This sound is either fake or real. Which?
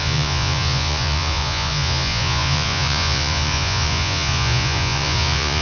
fake